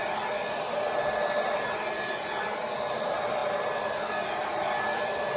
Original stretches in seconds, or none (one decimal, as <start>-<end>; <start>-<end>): 0.0-5.4